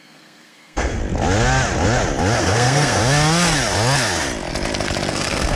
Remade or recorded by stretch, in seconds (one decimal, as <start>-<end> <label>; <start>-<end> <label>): 0.0-1.0 remade; 1.0-2.4 recorded; 2.4-3.0 remade; 3.0-5.1 recorded; 5.1-5.6 remade